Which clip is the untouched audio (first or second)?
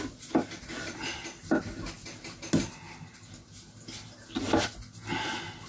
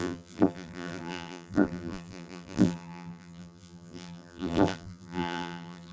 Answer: first